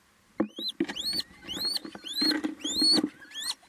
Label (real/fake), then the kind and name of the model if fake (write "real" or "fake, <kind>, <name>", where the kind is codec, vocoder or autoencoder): real